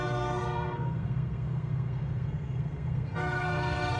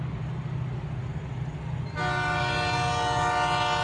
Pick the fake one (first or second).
first